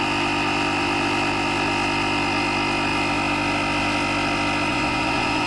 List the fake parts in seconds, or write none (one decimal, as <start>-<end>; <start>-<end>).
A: 4.7-5.5